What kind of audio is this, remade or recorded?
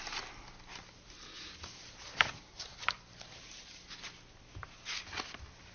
recorded